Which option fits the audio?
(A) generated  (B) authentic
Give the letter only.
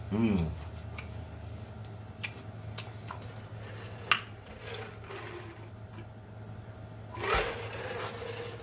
B